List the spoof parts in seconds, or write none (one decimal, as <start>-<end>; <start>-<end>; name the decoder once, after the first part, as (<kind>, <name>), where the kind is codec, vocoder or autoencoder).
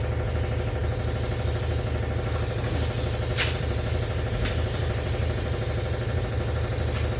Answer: 3.3-6.2 (vocoder, BigVGAN v2)